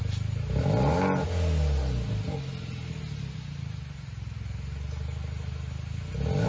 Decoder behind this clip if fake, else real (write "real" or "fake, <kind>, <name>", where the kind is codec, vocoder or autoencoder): real